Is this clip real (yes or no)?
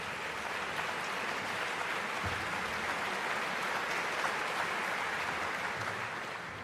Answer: yes